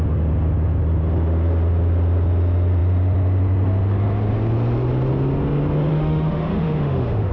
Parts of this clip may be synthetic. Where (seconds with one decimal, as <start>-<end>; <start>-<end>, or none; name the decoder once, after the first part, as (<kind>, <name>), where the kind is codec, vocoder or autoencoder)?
5.9-7.3 (autoencoder, DAC-VAE)